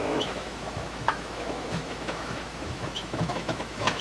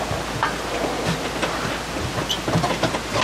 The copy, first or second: first